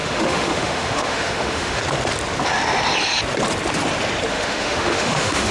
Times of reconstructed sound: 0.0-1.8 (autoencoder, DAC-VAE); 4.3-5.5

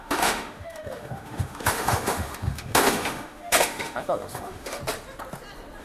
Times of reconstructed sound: 0.0-4.8 (autoencoder, DAC-VAE)